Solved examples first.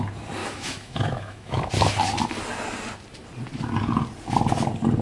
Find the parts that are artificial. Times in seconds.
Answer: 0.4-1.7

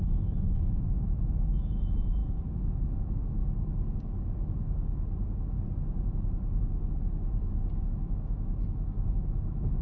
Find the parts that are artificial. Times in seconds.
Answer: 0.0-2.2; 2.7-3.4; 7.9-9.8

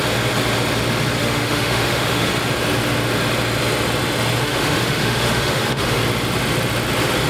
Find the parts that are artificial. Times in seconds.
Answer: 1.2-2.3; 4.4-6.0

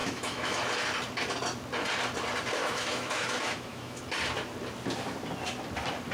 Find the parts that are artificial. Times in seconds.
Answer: 0.0-0.6; 2.6-4.0